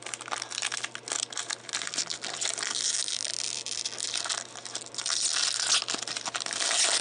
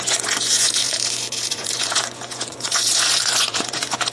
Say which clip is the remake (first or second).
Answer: second